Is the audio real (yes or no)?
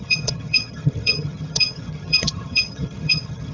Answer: no